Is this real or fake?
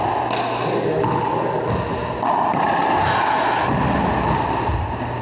real